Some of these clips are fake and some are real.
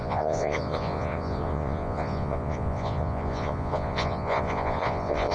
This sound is fake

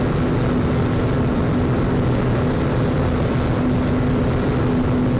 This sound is real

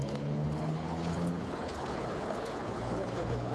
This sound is fake